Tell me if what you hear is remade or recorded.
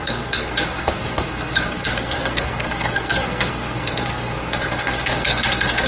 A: remade